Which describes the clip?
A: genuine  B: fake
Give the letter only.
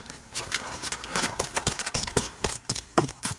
B